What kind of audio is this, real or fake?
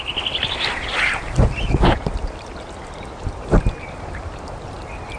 real